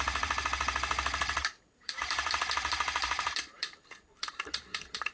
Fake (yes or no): yes